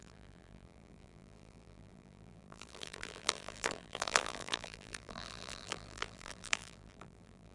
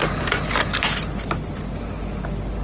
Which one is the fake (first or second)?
first